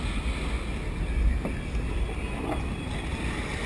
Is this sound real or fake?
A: real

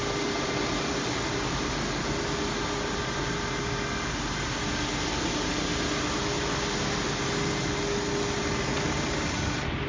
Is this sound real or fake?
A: real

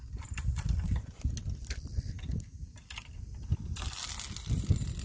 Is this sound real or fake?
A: real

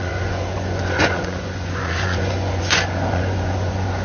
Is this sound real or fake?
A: fake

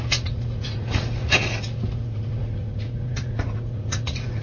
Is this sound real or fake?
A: fake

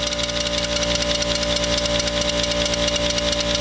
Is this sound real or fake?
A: real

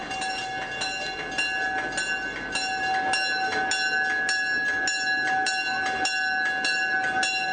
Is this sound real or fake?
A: real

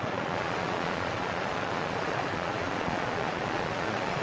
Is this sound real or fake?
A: fake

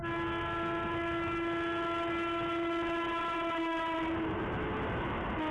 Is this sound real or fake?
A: real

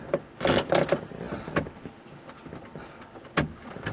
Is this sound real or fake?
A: real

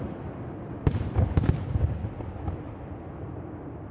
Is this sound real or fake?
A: real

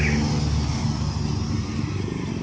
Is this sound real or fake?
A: real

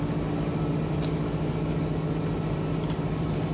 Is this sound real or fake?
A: real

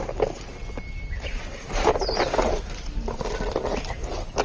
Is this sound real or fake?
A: real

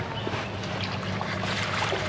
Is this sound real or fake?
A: real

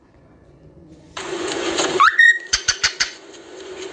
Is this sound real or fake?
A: fake